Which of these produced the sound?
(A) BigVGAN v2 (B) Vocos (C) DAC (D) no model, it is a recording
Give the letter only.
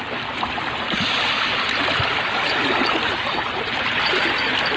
D